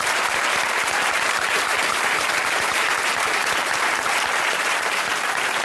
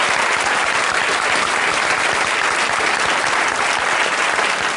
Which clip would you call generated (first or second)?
first